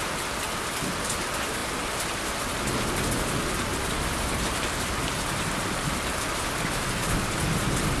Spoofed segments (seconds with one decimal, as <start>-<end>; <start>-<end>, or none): none